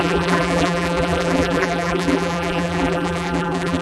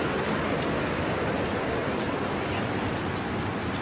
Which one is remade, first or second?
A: first